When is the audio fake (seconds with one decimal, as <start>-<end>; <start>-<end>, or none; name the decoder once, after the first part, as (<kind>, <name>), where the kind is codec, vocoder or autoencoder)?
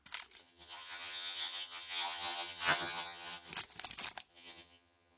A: 0.4-3.5 (vocoder, HiFi-GAN); 4.3-5.2